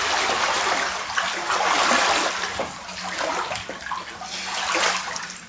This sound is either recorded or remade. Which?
recorded